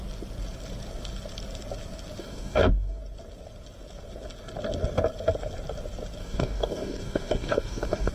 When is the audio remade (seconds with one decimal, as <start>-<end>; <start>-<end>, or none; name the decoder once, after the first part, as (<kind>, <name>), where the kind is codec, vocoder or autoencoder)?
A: 2.2-3.0 (codec, DAC); 6.2-8.1